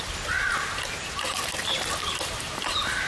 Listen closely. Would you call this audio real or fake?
real